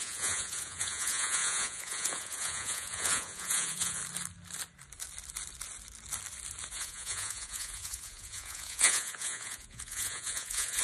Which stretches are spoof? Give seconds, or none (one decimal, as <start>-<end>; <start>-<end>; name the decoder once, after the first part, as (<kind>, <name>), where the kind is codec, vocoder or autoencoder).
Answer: 0.0-4.0 (vocoder, Vocos); 6.7-10.8